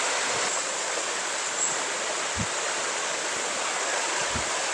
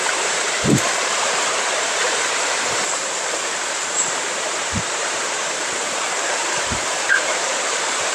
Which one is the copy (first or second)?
second